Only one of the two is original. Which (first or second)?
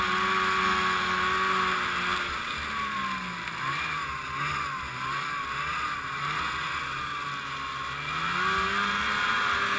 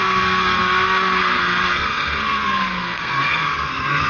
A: first